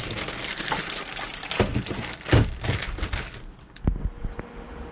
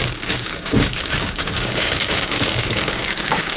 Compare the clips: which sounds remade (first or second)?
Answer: second